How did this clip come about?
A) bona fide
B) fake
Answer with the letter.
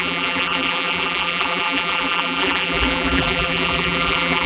B